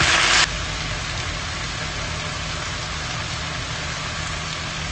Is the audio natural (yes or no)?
yes